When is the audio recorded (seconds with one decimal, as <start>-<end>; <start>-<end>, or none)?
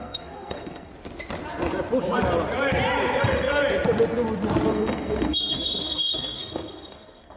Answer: 0.9-3.2; 3.6-4.7